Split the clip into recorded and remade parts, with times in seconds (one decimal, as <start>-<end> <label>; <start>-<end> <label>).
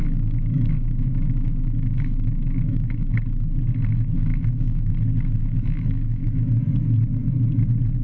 0.0-3.1 remade; 3.1-4.3 recorded; 4.3-4.9 remade; 4.9-5.4 recorded; 5.4-6.5 remade; 6.5-8.0 recorded